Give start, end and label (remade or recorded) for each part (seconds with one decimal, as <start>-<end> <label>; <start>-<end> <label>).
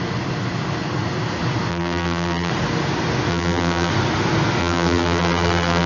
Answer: 0.0-1.7 recorded; 1.7-2.5 remade; 2.5-3.3 recorded; 3.3-3.9 remade; 3.9-4.6 recorded; 4.6-5.9 remade